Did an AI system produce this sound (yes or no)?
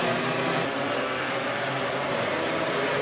no